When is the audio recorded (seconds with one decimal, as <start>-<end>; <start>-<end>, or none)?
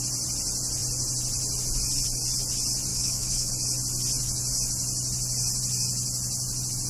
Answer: 0.0-2.9; 3.5-6.9